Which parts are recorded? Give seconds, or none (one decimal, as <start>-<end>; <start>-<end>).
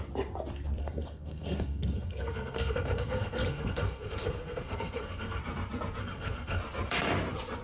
0.0-0.8; 5.4-6.0; 6.6-7.6